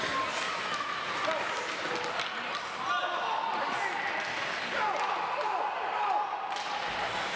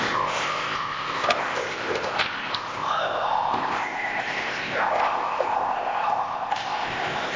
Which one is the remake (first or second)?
second